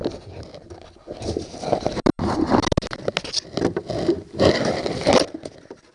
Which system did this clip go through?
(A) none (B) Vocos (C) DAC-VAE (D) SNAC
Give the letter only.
A